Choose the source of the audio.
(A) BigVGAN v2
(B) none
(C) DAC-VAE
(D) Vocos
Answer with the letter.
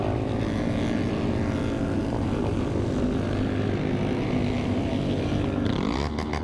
B